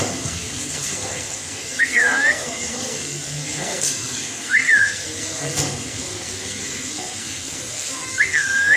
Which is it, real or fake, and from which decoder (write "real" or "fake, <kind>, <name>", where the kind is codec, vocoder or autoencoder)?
fake, codec, SNAC